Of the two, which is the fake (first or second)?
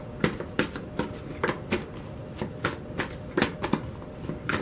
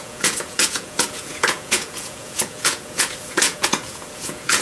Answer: second